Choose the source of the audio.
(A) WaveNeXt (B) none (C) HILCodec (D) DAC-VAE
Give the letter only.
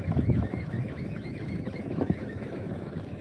D